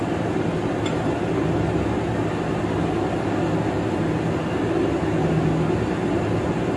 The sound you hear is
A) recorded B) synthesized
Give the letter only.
A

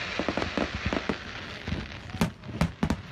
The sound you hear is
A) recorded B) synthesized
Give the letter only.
A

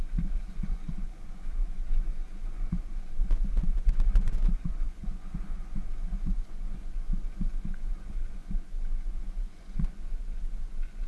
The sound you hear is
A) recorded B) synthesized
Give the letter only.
B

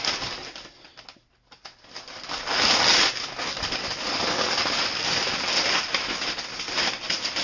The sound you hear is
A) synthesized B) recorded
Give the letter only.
B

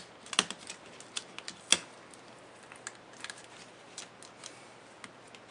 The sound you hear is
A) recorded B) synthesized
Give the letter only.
A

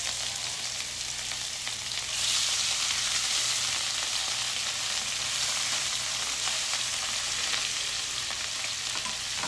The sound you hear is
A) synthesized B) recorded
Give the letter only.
A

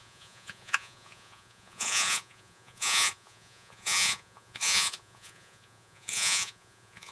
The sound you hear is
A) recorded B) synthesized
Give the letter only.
B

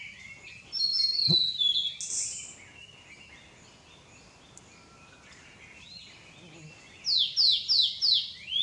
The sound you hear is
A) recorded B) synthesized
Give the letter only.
A